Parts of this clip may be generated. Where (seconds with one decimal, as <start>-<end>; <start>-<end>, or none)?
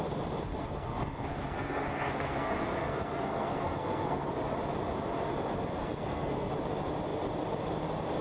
0.5-4.3; 5.8-6.5